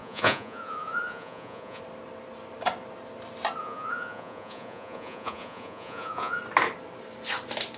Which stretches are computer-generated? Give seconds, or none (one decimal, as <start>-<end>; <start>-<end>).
0.0-1.8; 3.6-6.4